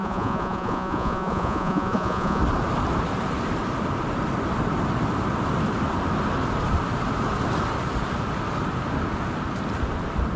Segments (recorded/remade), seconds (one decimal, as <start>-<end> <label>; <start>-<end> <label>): 0.0-2.4 remade; 2.4-10.4 recorded